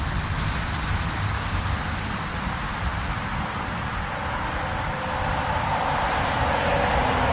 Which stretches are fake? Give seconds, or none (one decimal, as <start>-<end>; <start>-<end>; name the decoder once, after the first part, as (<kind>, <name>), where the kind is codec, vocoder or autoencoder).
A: none